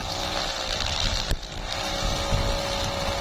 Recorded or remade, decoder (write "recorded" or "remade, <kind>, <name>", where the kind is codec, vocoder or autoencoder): recorded